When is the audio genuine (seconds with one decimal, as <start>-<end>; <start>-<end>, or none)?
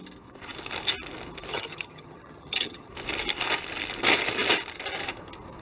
0.0-1.5; 2.9-5.6